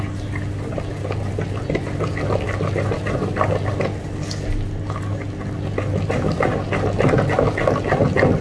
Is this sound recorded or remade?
recorded